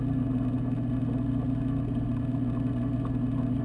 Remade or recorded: recorded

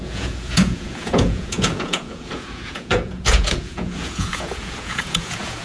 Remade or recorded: remade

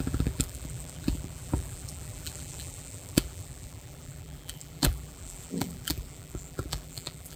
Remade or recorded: remade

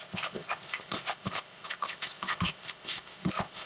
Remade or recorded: remade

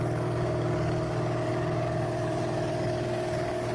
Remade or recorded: remade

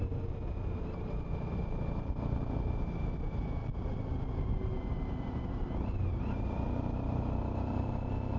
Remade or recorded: recorded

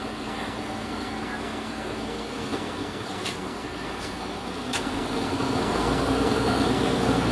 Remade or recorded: remade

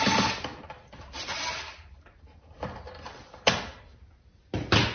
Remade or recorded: recorded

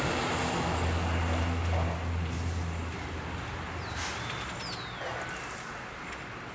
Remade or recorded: recorded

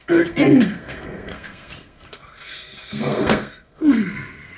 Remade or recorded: remade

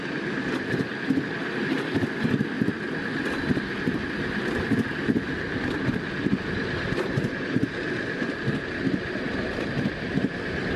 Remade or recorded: recorded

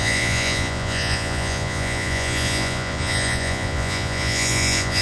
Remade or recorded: remade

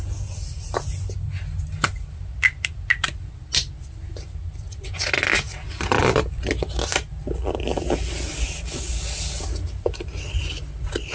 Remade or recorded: recorded